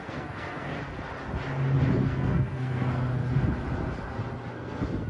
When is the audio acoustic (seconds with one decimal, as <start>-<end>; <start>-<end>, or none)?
0.7-2.0; 3.2-4.5